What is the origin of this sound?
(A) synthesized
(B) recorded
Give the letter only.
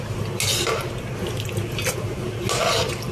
B